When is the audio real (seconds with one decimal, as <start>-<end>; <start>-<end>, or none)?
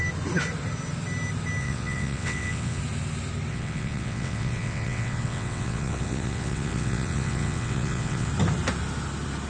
0.0-1.6; 2.8-3.5; 8.3-9.5